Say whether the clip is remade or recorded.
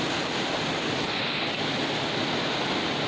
recorded